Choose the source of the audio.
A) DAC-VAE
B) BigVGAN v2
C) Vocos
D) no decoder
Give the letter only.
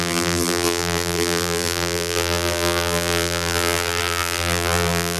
B